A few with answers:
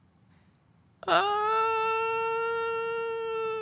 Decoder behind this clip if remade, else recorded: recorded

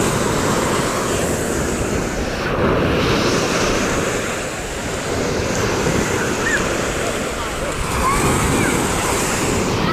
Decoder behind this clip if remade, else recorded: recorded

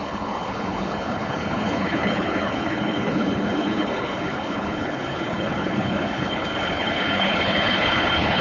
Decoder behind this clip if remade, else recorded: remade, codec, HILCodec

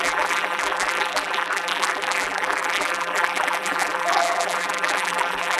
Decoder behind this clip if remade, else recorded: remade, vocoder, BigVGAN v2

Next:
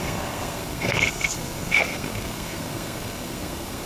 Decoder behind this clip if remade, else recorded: remade, codec, SNAC